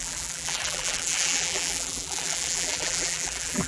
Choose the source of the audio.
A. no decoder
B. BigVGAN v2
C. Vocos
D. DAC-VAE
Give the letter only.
B